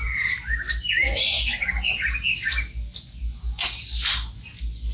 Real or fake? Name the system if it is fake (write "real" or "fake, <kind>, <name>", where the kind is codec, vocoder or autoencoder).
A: real